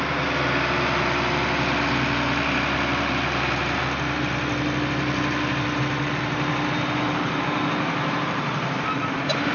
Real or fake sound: real